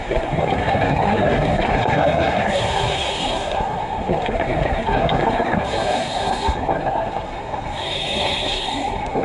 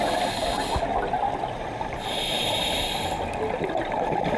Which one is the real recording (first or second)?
second